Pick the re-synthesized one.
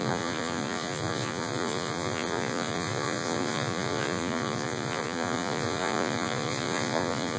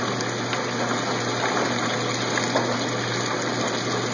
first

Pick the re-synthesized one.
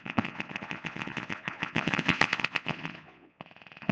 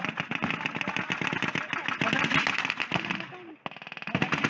first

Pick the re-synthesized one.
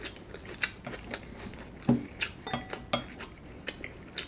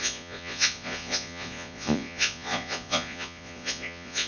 second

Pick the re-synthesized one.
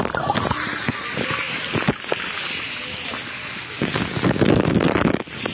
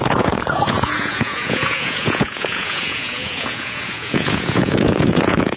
second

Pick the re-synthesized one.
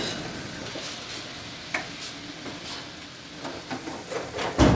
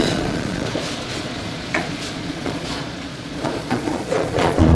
second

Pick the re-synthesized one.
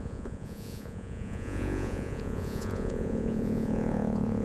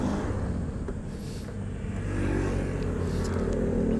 first